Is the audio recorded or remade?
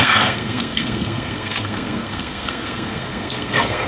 remade